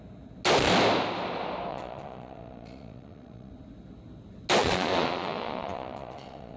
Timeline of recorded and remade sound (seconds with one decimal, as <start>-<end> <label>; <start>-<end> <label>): 0.0-1.7 recorded; 1.7-3.5 remade; 3.5-4.6 recorded; 4.6-6.6 remade